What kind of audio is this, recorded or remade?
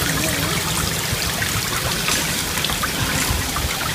recorded